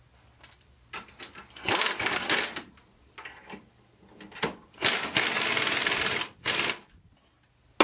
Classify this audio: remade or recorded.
recorded